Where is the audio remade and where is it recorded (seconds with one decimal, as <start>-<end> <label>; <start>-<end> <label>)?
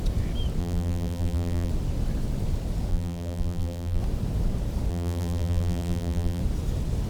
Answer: 0.0-0.6 recorded; 0.6-1.7 remade; 1.7-2.9 recorded; 2.9-4.0 remade; 4.0-4.9 recorded; 4.9-6.4 remade; 6.4-7.1 recorded